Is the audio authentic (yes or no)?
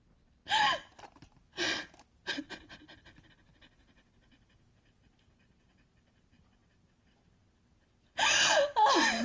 yes